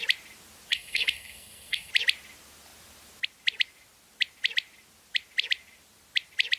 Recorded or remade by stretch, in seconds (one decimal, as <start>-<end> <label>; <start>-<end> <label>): 0.0-0.7 recorded; 0.7-1.9 remade; 1.9-6.6 recorded